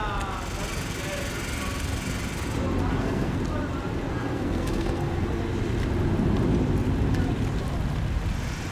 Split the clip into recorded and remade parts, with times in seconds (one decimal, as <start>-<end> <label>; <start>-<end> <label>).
0.0-2.9 recorded; 2.9-3.4 remade; 3.4-4.1 recorded; 4.1-5.4 remade; 5.4-8.7 recorded